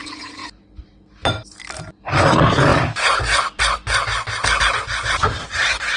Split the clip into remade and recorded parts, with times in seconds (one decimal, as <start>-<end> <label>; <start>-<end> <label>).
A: 0.0-6.0 recorded